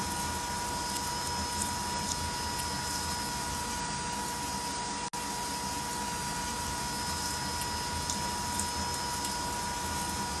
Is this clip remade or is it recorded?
recorded